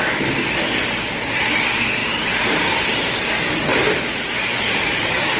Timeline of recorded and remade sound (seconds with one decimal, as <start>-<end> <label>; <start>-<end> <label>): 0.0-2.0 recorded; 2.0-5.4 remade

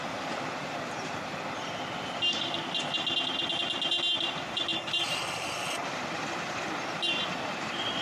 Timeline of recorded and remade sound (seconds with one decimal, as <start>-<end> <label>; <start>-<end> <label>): 0.0-8.0 remade

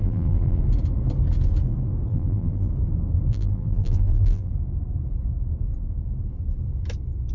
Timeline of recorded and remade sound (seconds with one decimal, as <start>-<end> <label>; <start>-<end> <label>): 0.0-0.6 remade; 0.6-2.1 recorded; 2.1-2.7 remade; 2.7-3.3 recorded; 3.3-4.5 remade; 4.5-7.3 recorded